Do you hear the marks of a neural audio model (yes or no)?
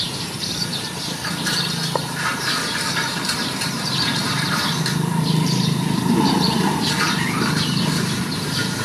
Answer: yes